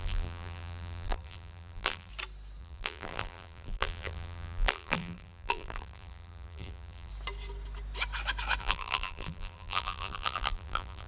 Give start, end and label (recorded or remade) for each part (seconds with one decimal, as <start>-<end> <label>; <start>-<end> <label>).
0.0-2.1 remade; 2.1-2.6 recorded; 2.6-7.1 remade; 7.1-8.6 recorded; 8.6-11.1 remade

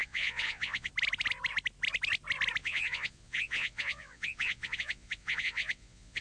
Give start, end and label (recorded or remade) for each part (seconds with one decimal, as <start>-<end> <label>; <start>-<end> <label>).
0.0-0.9 remade; 0.9-2.6 recorded; 2.6-6.2 remade

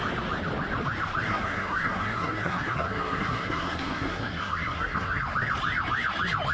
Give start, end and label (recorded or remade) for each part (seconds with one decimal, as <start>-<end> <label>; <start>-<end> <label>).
0.0-1.3 recorded; 1.3-5.2 remade; 5.2-6.5 recorded

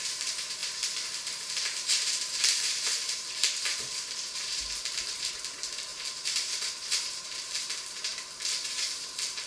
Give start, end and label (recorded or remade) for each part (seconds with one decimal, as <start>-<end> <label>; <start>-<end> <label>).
0.0-9.5 remade

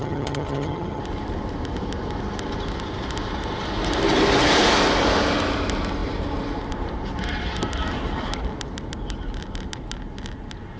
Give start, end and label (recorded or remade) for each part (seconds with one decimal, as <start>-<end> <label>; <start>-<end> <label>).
0.0-1.0 remade; 1.0-10.8 recorded

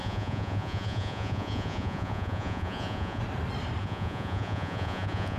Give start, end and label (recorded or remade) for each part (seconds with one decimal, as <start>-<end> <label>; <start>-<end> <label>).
0.0-3.2 remade; 3.2-3.8 recorded; 3.8-5.4 remade